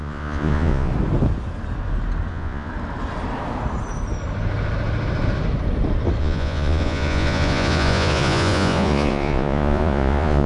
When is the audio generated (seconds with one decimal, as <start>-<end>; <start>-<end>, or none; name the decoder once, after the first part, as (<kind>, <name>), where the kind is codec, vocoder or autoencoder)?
0.0-0.9 (vocoder, Vocos); 2.3-2.7; 6.2-10.5